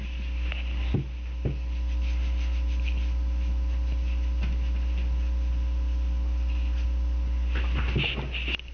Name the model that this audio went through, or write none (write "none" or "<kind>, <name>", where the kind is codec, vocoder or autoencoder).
none